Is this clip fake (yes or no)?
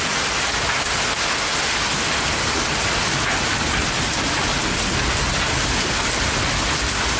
no